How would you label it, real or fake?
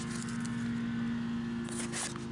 real